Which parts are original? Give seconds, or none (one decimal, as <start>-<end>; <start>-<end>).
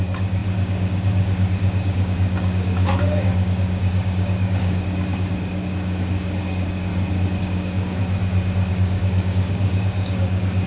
6.9-7.4; 8.0-8.7